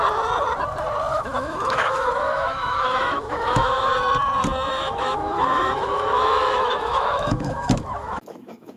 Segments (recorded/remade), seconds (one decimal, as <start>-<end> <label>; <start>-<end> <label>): 0.0-1.1 recorded; 1.1-3.9 remade; 3.9-4.7 recorded; 4.7-8.8 remade